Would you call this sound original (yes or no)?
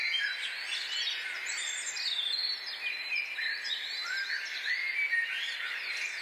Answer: yes